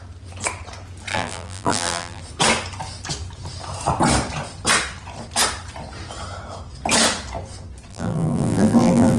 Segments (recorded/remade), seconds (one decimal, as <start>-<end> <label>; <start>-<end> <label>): 0.0-1.1 recorded; 1.1-2.2 remade; 2.2-7.9 recorded; 7.9-9.2 remade